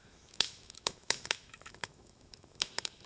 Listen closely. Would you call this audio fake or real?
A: fake